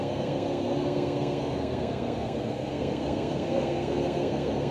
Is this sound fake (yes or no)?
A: yes